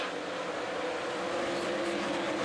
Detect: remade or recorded recorded